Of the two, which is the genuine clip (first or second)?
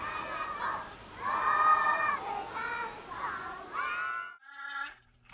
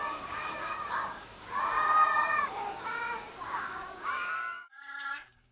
first